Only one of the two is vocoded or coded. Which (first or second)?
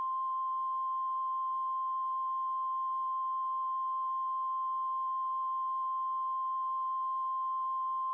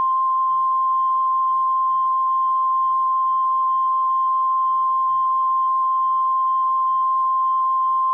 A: second